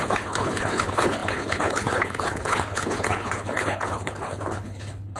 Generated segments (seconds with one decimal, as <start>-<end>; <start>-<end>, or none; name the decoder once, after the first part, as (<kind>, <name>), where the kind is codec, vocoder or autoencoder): 0.0-5.2 (codec, HILCodec)